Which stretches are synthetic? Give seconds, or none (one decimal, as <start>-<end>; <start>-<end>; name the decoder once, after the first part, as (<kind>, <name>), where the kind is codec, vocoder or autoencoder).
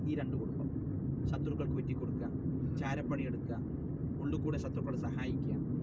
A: 2.5-3.2 (vocoder, BigVGAN v2); 4.0-5.0